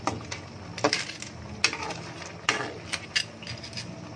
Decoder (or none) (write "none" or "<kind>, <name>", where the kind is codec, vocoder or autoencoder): none